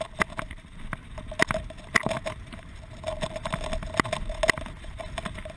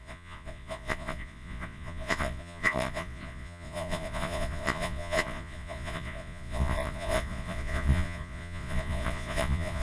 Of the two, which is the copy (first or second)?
second